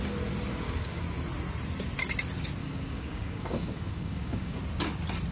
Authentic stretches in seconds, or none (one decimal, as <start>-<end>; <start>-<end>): 0.0-0.5; 1.0-2.6; 4.6-5.3